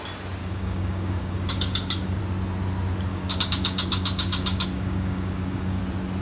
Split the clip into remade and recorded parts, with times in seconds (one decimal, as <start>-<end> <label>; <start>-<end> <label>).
0.0-0.4 recorded; 0.4-2.2 remade; 2.2-3.1 recorded; 3.1-5.8 remade; 5.8-6.2 recorded